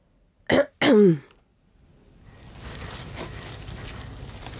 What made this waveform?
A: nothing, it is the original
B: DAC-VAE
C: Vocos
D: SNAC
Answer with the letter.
A